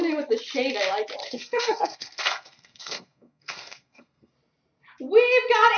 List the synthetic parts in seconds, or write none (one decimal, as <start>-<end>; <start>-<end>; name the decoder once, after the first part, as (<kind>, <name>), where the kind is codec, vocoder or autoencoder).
1.2-4.3 (codec, SNAC)